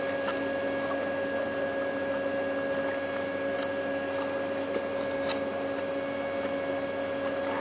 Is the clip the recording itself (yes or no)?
yes